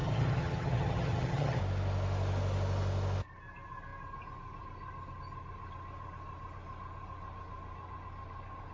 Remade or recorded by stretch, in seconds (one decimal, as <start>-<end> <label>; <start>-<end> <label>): 0.0-1.6 remade; 1.6-8.7 recorded